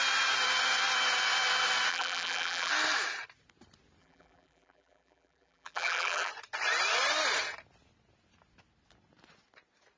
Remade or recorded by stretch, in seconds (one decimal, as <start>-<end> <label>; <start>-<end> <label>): 0.0-1.9 recorded; 1.9-2.7 remade; 2.7-4.0 recorded; 4.0-6.3 remade; 6.3-10.0 recorded